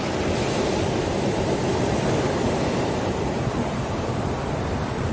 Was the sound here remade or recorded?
recorded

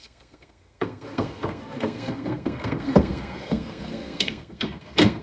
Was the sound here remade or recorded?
remade